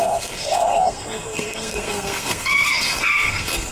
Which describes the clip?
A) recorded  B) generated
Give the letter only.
B